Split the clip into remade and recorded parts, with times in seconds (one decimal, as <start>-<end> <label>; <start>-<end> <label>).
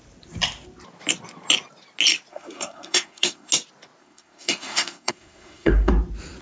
0.0-2.3 recorded; 2.3-3.5 remade; 3.5-4.0 recorded; 4.0-5.9 remade; 5.9-6.4 recorded